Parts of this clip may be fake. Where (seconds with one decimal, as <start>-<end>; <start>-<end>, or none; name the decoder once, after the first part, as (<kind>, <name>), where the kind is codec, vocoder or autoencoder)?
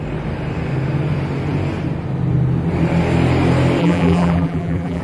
3.8-5.0 (vocoder, BigVGAN v2)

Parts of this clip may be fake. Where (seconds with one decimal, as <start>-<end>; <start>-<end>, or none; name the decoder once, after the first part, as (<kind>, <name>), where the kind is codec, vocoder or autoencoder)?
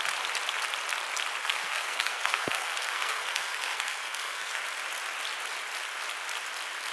1.4-4.6 (codec, SNAC)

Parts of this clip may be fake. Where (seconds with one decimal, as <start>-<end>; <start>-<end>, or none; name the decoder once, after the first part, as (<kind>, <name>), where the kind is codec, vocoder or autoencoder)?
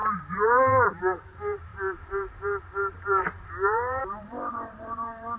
0.0-5.4 (vocoder, BigVGAN v2)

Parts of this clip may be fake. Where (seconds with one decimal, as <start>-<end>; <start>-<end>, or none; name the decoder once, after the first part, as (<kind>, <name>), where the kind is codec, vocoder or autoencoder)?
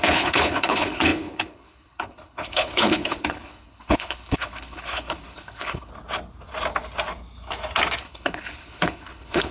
0.0-5.9 (codec, HILCodec); 8.0-9.5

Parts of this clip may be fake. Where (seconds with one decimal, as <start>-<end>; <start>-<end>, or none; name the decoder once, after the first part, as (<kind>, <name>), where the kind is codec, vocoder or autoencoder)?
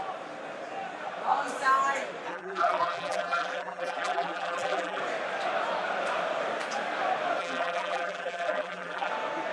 2.3-5.0 (vocoder, BigVGAN v2); 7.4-9.1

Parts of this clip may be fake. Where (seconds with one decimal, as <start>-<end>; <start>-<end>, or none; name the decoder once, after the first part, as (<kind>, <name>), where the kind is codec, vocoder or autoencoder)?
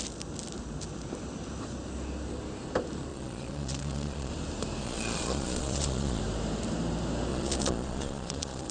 3.1-4.3 (vocoder, Vocos); 4.8-6.2; 7.3-8.7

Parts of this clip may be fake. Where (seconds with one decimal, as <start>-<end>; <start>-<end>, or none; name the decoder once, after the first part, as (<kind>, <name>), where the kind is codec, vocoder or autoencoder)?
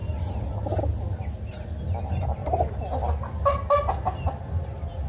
0.0-0.8 (vocoder, BigVGAN v2)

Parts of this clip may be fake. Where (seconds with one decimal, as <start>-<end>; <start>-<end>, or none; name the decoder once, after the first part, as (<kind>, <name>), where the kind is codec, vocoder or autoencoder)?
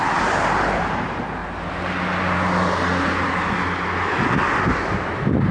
0.0-1.4 (vocoder, BigVGAN v2); 4.7-5.5